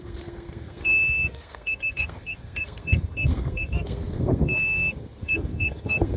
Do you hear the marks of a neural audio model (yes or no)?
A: yes